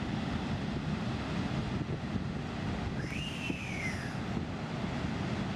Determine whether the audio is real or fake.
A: real